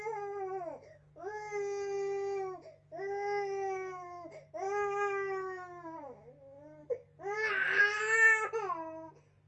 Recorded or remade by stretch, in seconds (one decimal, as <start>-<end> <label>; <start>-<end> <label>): 0.0-9.5 recorded